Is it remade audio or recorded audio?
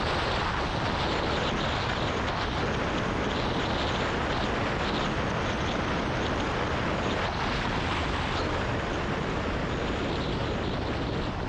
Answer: recorded